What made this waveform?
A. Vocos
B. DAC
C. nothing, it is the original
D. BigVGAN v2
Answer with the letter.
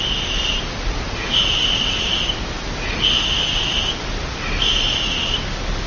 C